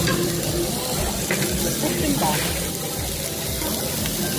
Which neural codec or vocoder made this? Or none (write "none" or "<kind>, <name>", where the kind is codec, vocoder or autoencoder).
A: none